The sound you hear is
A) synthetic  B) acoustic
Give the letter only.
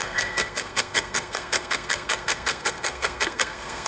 A